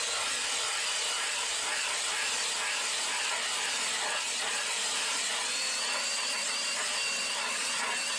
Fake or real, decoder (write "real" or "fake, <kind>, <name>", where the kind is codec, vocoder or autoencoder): real